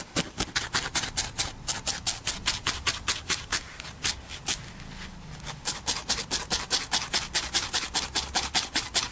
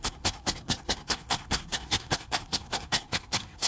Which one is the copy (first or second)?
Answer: second